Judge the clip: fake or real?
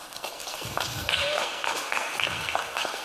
fake